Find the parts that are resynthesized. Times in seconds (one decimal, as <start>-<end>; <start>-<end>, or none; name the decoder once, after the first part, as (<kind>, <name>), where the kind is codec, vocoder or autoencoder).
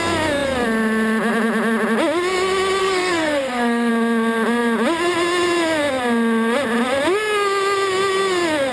2.8-3.9 (codec, SNAC)